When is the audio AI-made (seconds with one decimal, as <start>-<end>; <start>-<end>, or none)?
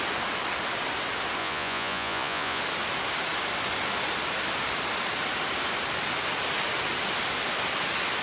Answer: 1.4-2.6